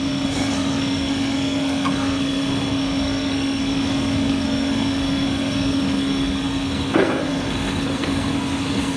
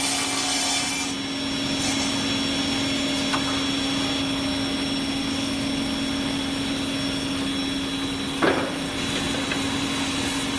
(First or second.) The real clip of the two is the second